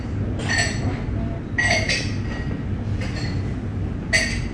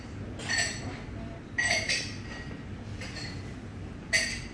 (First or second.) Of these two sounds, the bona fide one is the first